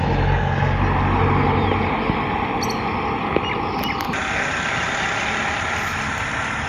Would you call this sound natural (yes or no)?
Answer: yes